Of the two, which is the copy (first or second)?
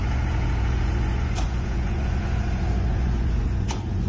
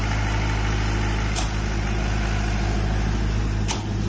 first